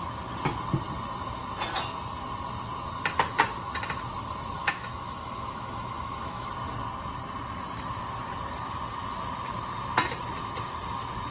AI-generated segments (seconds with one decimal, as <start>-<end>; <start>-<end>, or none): 4.6-6.5

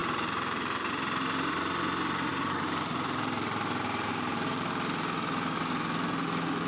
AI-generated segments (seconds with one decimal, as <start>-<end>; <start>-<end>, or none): 0.0-0.9; 2.3-4.9

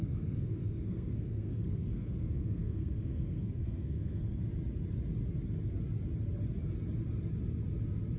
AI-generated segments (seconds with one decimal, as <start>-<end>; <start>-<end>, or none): 0.0-4.4

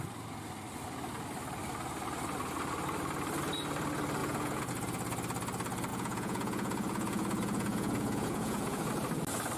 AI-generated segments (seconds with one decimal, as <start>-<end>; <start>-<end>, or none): 4.2-4.7; 5.9-8.9